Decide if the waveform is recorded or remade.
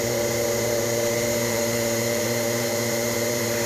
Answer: remade